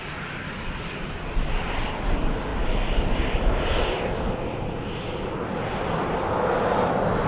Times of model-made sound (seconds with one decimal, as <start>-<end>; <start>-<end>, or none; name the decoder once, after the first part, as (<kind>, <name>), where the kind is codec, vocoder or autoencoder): none

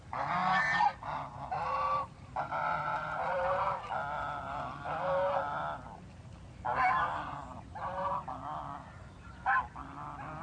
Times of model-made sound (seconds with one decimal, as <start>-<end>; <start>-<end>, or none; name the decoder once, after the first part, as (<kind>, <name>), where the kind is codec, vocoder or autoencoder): 0.4-3.9 (vocoder, BigVGAN v2)